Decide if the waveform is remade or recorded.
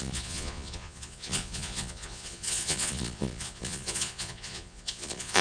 remade